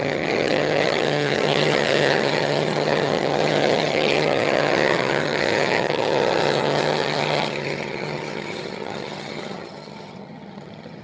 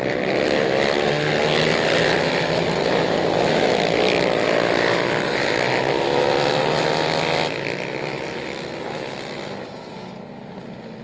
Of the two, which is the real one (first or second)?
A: second